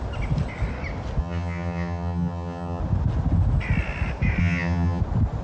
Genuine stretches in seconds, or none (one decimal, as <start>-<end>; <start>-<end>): 0.0-1.2; 2.8-4.4; 5.0-5.4